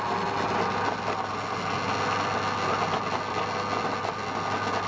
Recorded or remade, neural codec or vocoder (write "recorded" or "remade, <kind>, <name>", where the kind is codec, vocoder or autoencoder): recorded